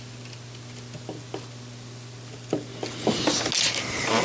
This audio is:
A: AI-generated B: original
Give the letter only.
B